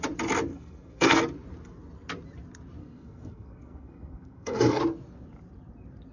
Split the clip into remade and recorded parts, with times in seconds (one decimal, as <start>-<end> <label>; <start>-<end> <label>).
0.0-0.5 recorded; 0.5-1.2 remade; 1.2-2.8 recorded; 2.8-4.8 remade; 4.8-6.1 recorded